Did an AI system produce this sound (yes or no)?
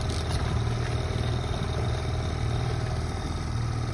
no